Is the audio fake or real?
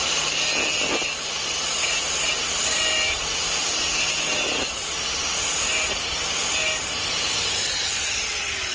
real